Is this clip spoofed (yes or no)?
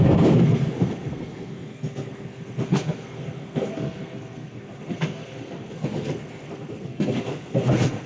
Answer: yes